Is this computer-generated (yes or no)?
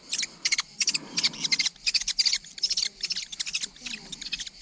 no